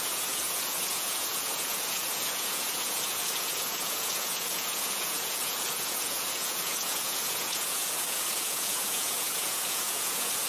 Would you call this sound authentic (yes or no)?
no